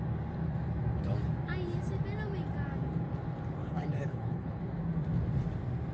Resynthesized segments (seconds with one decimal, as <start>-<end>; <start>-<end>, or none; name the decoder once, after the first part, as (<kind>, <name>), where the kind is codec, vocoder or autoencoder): 3.6-4.6 (codec, HILCodec)